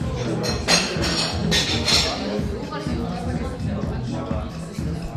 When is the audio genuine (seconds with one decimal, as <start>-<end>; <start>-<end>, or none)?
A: 0.0-5.2